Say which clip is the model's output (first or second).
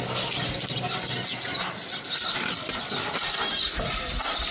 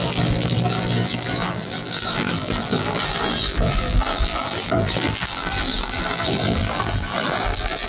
second